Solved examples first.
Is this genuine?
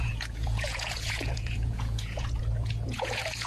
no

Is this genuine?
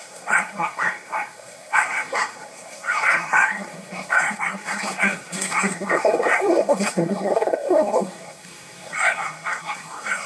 no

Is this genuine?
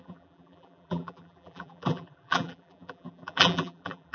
no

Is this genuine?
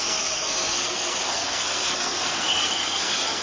no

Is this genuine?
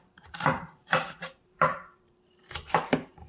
no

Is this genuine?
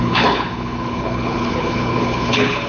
no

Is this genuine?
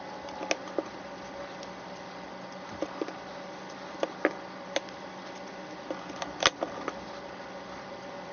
yes